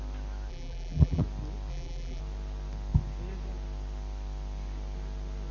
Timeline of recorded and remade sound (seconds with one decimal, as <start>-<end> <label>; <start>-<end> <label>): 0.0-0.5 recorded; 0.5-1.2 remade; 1.2-1.7 recorded; 1.7-2.2 remade; 2.2-5.5 recorded